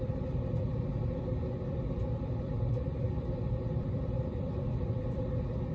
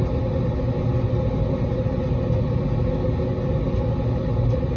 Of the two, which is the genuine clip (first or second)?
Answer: second